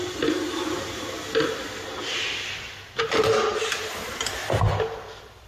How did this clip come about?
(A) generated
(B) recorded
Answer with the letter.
B